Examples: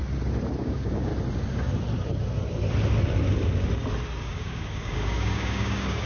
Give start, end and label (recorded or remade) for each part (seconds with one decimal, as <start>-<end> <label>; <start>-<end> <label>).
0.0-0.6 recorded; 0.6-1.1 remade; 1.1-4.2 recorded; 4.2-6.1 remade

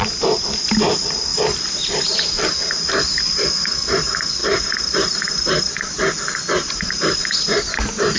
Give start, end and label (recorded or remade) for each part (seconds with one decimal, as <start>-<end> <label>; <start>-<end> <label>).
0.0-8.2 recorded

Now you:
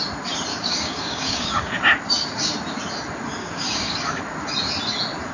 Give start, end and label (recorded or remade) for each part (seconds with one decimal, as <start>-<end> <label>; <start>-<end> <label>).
0.0-0.5 recorded; 0.5-1.7 remade; 1.7-3.4 recorded; 3.4-4.2 remade; 4.2-5.3 recorded

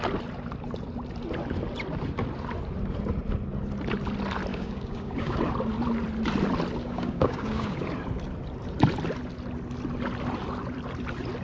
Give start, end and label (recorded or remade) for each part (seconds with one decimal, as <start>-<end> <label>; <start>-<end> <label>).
0.0-4.5 recorded; 4.5-5.4 remade; 5.4-6.8 recorded; 6.8-7.8 remade; 7.8-11.4 recorded

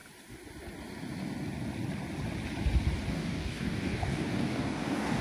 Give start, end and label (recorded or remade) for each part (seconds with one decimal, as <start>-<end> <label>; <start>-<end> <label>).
0.0-3.1 recorded; 3.1-5.2 remade

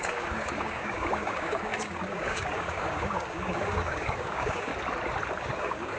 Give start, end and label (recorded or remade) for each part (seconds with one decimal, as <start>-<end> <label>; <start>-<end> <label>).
0.0-4.7 remade; 4.7-5.4 recorded; 5.4-6.0 remade

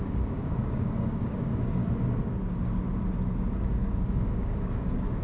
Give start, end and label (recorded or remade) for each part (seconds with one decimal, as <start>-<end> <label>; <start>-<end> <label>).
0.0-1.8 remade; 1.8-3.4 recorded; 3.4-5.2 remade

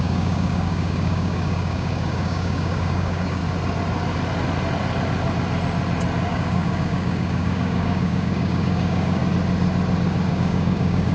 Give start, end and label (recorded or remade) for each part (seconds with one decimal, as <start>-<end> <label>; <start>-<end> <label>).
0.0-3.4 remade; 3.4-6.3 recorded; 6.3-9.2 remade; 9.2-10.3 recorded; 10.3-11.1 remade